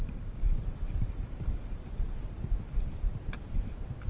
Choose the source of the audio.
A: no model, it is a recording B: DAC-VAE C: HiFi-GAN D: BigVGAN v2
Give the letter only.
A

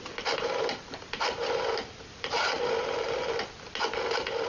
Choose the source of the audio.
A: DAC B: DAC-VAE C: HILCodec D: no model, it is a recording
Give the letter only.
D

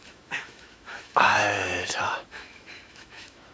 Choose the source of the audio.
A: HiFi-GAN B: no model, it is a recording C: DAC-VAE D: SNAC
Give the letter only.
C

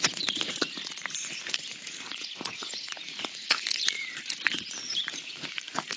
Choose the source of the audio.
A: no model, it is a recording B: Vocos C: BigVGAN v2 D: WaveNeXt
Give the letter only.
B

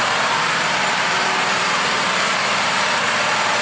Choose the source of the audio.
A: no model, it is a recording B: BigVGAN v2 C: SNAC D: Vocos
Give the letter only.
B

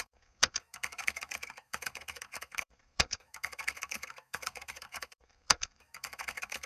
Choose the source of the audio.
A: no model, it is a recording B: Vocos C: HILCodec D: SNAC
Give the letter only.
D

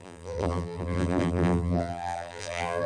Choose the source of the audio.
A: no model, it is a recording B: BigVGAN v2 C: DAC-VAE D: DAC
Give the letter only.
B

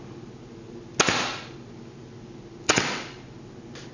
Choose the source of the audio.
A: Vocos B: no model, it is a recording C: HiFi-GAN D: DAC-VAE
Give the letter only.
B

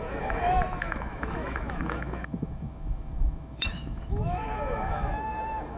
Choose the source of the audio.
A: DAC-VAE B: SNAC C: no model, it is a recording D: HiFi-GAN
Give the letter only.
A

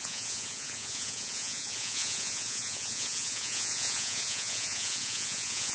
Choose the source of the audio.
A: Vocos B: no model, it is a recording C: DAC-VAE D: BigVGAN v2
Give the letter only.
A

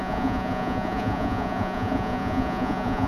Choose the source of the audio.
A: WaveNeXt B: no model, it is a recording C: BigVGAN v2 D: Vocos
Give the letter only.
D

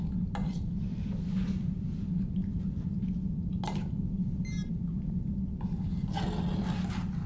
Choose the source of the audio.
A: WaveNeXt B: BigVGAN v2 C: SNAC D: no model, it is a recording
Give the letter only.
D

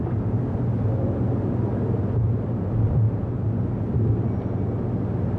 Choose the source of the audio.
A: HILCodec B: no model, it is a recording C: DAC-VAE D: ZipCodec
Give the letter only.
B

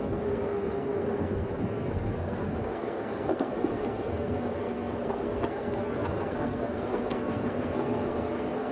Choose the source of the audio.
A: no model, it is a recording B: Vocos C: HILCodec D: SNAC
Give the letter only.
D